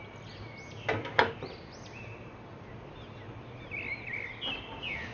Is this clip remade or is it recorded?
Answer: recorded